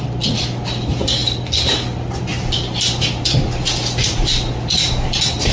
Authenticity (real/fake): real